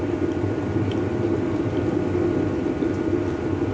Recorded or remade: recorded